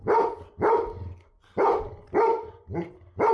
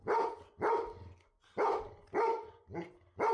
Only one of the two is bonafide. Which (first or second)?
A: second